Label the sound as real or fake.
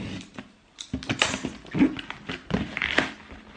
real